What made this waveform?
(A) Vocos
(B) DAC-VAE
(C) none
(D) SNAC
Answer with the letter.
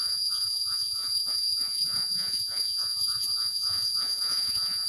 A